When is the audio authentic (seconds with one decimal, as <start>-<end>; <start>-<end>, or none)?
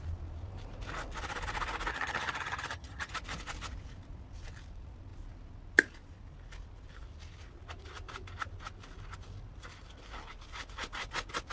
0.0-1.9; 3.1-11.5